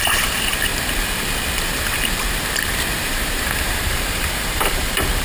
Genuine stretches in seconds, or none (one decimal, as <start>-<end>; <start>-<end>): 0.7-3.0